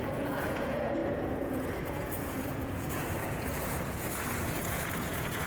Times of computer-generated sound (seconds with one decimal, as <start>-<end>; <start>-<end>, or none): 0.0-5.5